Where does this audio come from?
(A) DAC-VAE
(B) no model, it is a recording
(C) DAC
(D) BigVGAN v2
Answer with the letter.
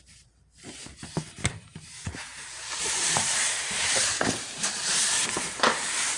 D